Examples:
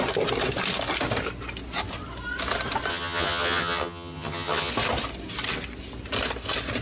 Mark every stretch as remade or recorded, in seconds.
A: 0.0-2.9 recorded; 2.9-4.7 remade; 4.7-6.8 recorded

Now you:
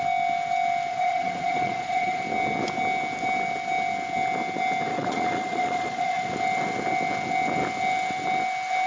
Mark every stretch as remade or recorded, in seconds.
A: 0.0-0.9 recorded; 0.9-2.2 remade; 2.2-4.9 recorded; 4.9-6.3 remade; 6.3-8.9 recorded

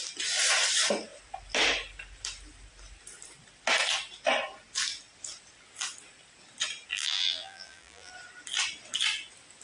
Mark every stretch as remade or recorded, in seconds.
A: 0.0-6.9 recorded; 6.9-8.1 remade; 8.1-9.6 recorded

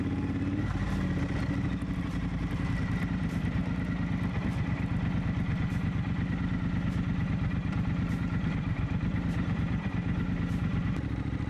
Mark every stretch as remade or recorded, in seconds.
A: 0.0-0.8 remade; 0.8-2.0 recorded; 2.0-3.6 remade; 3.6-7.7 recorded; 7.7-11.5 remade

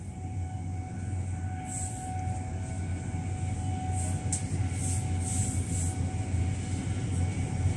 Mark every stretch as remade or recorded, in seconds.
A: 0.0-7.8 recorded

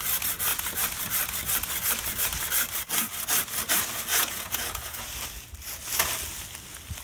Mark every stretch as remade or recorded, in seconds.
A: 0.0-4.1 recorded; 4.1-5.0 remade; 5.0-7.0 recorded

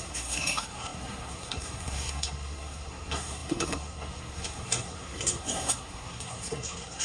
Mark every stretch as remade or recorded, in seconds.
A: 0.0-7.0 remade